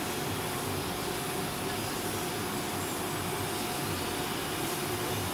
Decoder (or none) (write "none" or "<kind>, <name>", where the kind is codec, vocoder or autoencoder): none